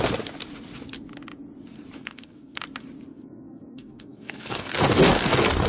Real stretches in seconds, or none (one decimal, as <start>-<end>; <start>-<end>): 0.0-2.0; 2.6-3.1; 4.7-5.7